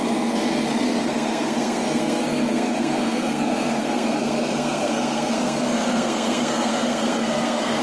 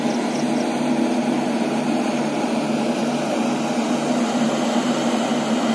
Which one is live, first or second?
second